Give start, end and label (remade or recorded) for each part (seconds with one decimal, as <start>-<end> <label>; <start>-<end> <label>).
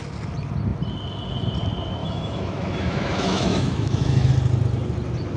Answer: 0.0-2.0 recorded; 2.0-4.3 remade; 4.3-5.4 recorded